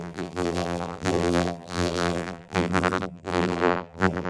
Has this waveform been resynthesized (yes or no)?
yes